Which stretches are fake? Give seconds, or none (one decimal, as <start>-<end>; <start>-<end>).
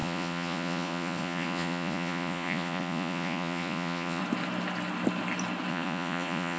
0.0-4.2; 5.7-6.6